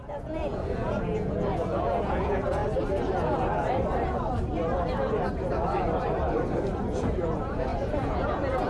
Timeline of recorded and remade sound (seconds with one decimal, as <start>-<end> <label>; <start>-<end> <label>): 0.0-2.6 remade; 2.6-6.8 recorded; 6.8-8.7 remade